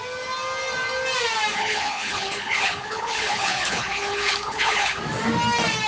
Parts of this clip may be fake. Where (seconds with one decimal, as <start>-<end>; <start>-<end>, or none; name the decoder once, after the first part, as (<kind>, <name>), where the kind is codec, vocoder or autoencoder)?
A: 1.5-5.0 (codec, HILCodec)